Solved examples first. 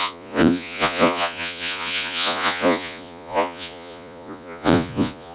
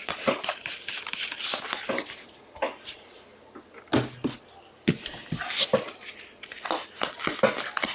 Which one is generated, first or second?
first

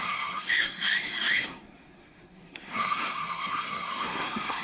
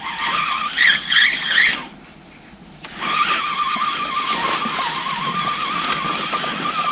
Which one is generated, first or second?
first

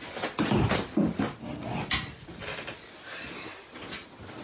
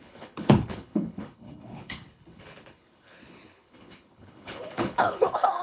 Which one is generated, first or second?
second